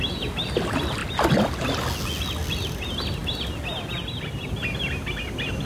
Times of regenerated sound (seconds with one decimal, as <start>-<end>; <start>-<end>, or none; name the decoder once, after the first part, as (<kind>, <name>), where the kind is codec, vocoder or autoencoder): none